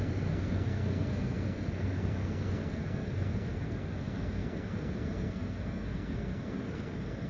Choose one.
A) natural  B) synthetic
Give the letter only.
B